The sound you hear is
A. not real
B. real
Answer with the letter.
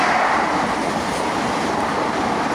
B